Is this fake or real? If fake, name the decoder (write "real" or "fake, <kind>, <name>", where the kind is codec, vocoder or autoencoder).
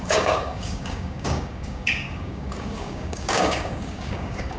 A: fake, codec, DAC